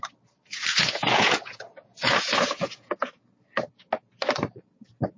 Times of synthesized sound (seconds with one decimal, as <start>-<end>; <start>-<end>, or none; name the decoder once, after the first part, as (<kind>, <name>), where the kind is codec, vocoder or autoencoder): 0.7-3.2 (vocoder, Vocos)